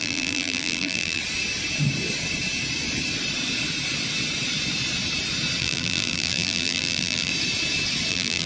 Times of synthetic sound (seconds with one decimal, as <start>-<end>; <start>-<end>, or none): 0.0-1.2; 5.6-7.3; 8.1-8.5